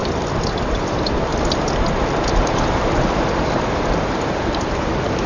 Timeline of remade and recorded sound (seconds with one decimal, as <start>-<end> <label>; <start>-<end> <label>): 0.0-0.7 recorded; 0.7-1.3 remade; 1.3-2.3 recorded; 2.3-5.3 remade

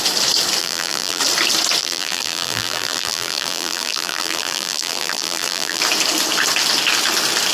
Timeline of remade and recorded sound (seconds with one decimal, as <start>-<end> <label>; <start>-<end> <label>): 0.0-0.6 recorded; 0.6-1.2 remade; 1.2-1.8 recorded; 1.8-5.8 remade; 5.8-7.5 recorded

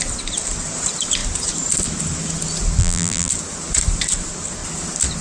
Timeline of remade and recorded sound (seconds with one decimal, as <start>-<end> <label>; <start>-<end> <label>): 0.0-2.8 recorded; 2.8-3.3 remade; 3.3-5.2 recorded

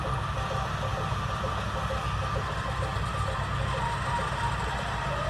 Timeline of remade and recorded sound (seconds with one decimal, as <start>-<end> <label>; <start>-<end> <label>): 0.0-5.3 recorded